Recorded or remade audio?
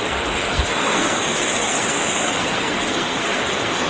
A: remade